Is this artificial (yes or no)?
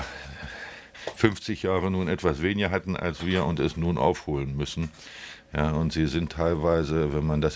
no